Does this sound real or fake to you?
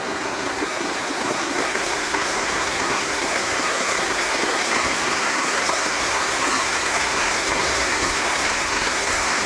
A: fake